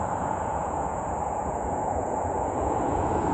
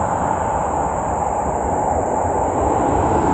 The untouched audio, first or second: second